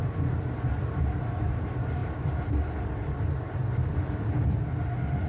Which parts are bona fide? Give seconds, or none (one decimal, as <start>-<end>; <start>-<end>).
0.0-5.3